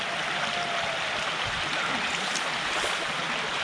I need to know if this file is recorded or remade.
recorded